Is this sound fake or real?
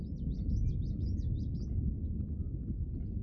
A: real